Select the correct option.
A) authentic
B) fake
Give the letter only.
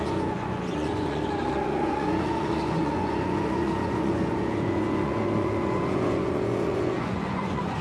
B